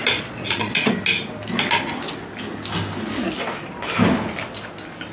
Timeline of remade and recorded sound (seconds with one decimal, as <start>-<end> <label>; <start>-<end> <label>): 0.0-0.9 remade; 0.9-5.1 recorded